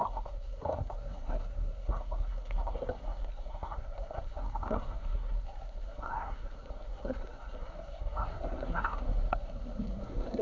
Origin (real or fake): fake